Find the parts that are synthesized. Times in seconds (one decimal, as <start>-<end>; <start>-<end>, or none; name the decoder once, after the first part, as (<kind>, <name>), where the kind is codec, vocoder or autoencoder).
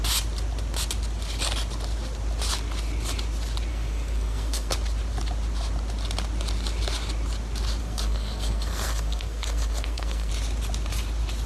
3.7-4.7 (codec, SNAC); 7.8-10.3